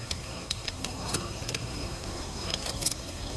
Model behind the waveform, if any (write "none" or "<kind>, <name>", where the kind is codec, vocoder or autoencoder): codec, SNAC